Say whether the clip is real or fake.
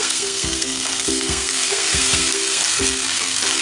fake